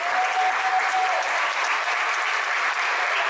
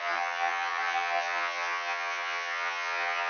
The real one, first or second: first